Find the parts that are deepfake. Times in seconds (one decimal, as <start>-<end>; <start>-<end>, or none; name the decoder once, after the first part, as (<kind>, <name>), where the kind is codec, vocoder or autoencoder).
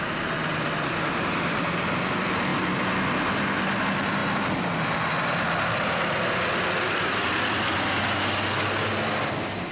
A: none